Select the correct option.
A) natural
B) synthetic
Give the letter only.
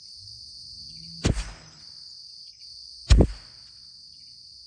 A